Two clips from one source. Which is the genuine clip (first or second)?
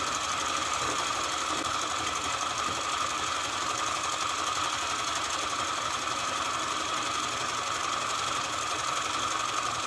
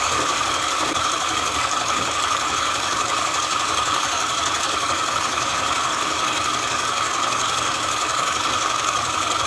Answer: first